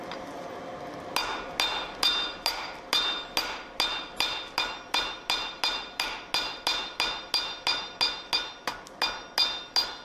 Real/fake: real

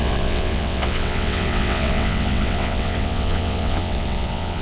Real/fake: fake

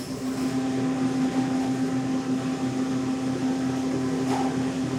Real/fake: real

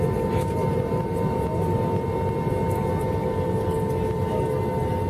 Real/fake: real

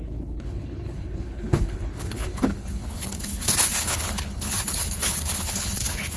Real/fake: fake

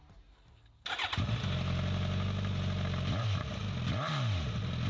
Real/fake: real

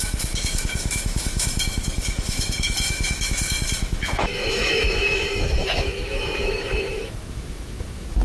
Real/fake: fake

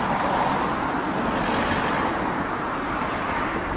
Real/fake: real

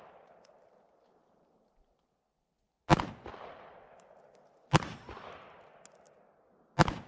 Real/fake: real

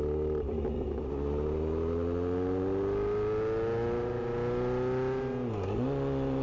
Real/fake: real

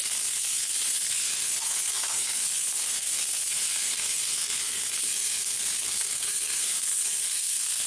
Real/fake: fake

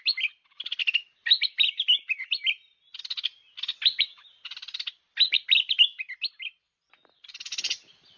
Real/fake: real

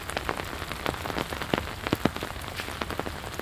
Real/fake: real